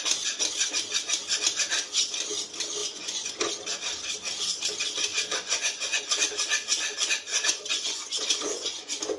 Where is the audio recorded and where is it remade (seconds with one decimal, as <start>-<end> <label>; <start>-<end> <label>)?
0.0-2.8 recorded; 2.8-3.5 remade; 3.5-5.1 recorded; 5.1-6.0 remade; 6.0-7.3 recorded; 7.3-9.2 remade